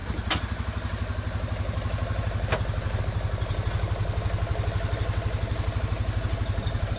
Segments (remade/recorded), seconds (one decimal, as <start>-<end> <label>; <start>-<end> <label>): 0.0-7.0 recorded